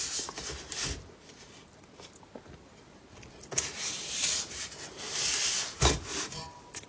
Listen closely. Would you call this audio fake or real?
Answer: real